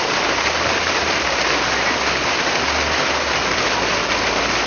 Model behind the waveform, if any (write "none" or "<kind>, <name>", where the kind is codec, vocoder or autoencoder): none